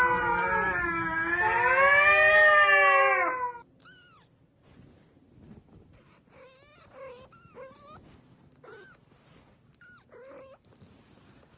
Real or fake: real